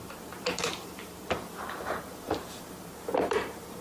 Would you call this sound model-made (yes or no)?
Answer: yes